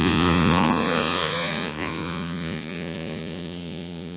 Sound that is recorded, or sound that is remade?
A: remade